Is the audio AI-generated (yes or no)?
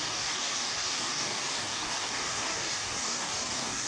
yes